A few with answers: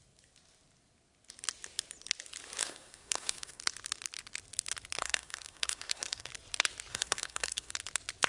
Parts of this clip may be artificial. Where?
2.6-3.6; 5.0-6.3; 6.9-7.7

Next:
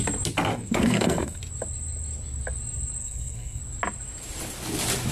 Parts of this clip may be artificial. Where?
0.5-1.4; 3.0-3.6

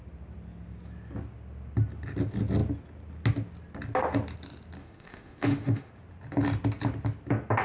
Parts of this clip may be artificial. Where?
4.8-5.9

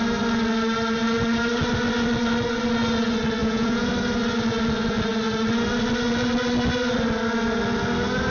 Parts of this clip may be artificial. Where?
3.4-3.9

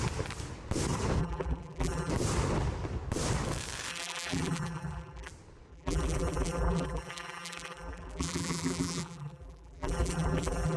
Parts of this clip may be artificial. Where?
1.2-2.1; 3.9-5.3; 5.7-10.8